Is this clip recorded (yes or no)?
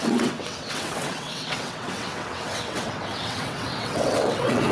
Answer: no